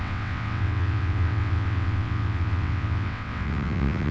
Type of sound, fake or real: fake